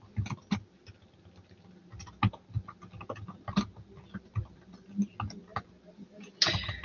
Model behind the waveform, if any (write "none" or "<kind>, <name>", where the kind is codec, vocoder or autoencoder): none